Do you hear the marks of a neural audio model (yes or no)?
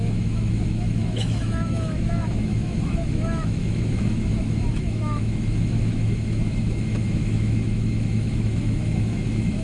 yes